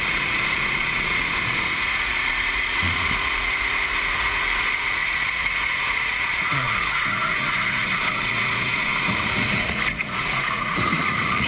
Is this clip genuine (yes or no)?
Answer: no